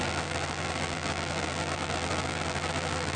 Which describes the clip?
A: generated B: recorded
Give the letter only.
A